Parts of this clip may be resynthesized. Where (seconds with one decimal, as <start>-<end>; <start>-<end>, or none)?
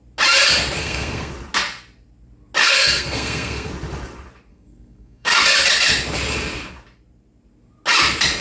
0.8-1.3; 2.6-3.7; 4.5-5.4